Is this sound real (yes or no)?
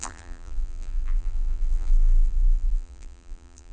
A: no